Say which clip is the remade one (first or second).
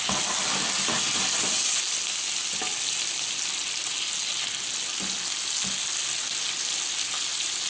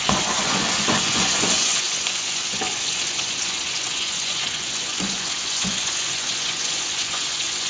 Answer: second